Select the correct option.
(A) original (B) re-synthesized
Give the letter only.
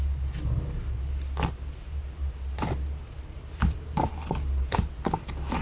A